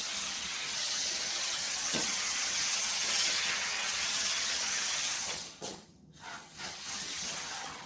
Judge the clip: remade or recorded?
remade